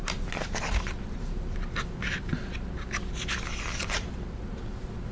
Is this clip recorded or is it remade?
recorded